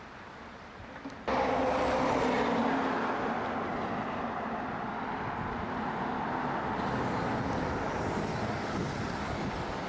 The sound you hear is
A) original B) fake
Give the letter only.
A